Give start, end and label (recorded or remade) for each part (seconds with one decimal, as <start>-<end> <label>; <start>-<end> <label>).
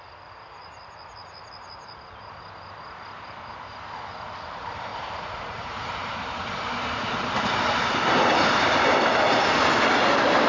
0.0-4.9 recorded; 4.9-6.5 remade; 6.5-10.5 recorded